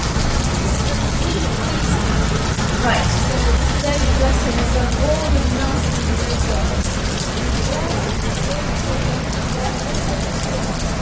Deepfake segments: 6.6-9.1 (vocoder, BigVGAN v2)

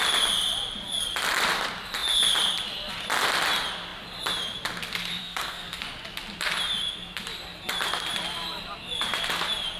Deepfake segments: 5.2-5.8 (codec, SNAC)